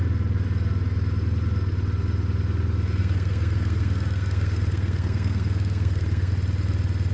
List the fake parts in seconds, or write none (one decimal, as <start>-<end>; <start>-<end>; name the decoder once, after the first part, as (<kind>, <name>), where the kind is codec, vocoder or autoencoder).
3.0-6.3 (codec, SNAC)